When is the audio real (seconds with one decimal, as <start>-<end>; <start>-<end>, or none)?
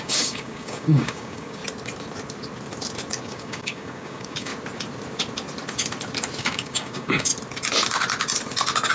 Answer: 1.6-3.2; 4.5-6.4; 7.3-8.9